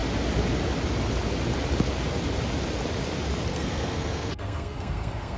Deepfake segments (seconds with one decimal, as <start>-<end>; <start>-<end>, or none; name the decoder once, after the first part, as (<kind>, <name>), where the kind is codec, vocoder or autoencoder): 3.5-5.4 (codec, SNAC)